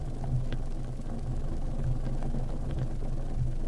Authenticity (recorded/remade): recorded